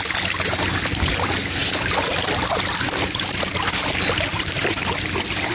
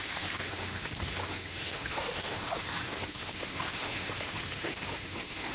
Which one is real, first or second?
first